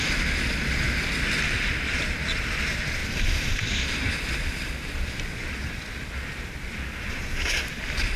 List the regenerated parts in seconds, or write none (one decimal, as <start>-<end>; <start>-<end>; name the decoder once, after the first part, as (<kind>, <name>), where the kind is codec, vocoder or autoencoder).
3.0-4.7 (vocoder, BigVGAN v2)